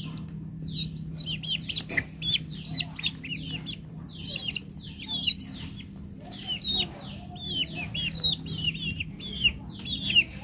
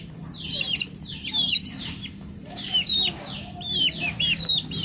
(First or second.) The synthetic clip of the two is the second